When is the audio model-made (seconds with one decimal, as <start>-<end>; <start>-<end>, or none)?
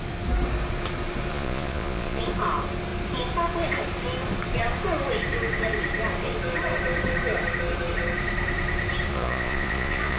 1.3-2.2; 9.1-10.2